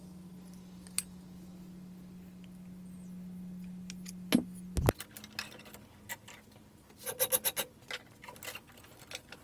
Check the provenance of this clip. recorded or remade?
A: recorded